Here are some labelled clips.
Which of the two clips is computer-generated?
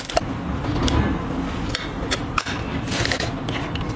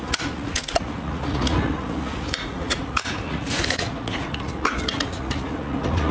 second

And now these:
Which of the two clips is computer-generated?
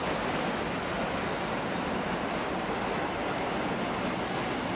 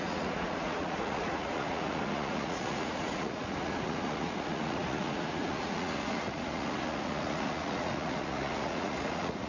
second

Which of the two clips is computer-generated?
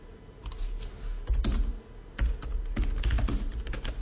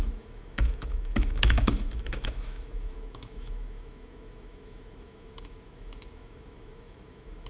second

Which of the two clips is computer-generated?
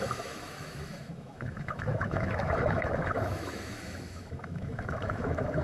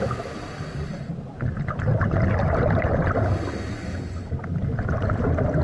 first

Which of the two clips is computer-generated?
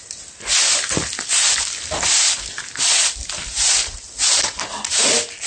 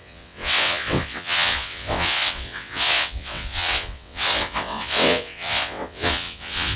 second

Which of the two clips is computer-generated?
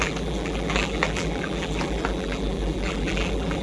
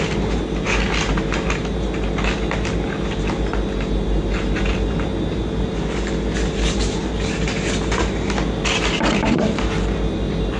first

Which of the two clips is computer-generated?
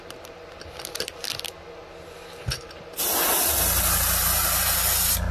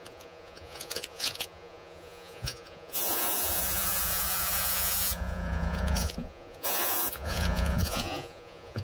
second